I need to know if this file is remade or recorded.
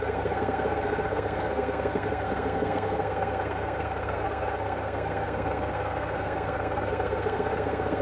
remade